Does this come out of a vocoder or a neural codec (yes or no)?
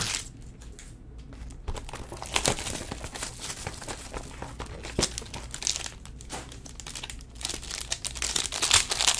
no